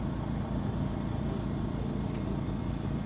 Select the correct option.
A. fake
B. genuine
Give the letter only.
B